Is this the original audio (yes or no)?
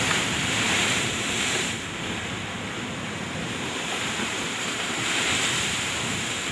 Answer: no